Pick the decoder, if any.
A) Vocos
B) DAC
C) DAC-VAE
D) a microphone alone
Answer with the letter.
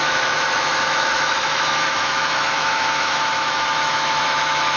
C